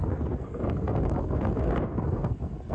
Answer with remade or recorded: remade